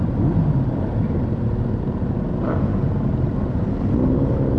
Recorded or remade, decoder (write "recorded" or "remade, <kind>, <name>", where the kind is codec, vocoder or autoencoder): remade, vocoder, BigVGAN v2